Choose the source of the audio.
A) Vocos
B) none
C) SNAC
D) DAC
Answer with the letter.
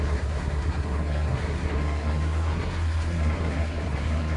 C